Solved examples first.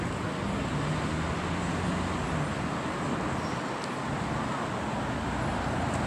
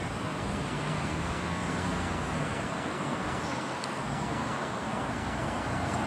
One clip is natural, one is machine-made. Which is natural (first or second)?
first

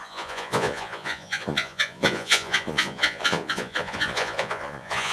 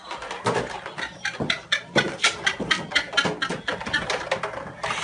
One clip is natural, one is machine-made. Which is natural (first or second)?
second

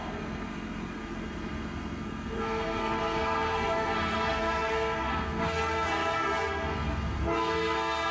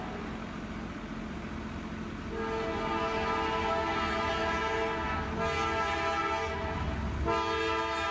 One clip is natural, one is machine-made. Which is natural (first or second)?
second